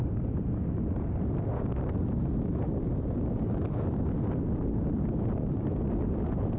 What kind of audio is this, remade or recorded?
recorded